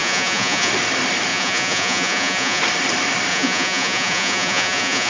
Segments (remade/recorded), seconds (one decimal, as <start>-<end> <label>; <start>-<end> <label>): 0.0-0.7 remade; 0.7-1.3 recorded; 1.3-2.6 remade; 2.6-3.3 recorded; 3.3-5.1 remade